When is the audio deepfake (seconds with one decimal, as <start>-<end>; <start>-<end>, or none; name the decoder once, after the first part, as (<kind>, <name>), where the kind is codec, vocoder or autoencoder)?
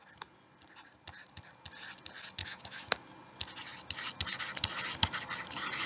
2.4-2.9 (autoencoder, DAC-VAE)